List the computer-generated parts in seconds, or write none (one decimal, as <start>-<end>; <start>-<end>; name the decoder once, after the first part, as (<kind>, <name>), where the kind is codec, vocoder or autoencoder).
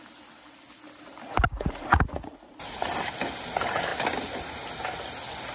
1.5-2.9 (vocoder, Vocos)